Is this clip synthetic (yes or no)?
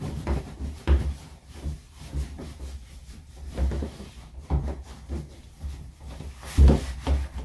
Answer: yes